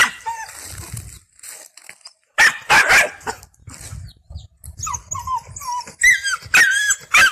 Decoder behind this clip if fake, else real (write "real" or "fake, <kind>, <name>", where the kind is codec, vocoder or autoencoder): real